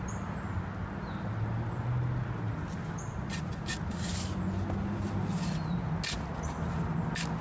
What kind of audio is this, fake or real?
real